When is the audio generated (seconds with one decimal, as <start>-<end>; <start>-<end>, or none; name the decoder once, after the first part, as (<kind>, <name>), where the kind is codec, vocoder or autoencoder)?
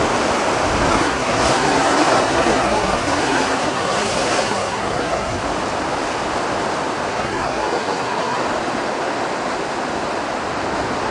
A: 0.9-5.4 (codec, SNAC); 7.1-8.4